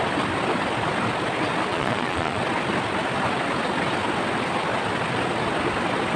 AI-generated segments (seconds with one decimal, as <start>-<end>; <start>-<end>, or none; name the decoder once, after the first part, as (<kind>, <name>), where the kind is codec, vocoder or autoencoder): 1.7-2.4 (vocoder, Vocos)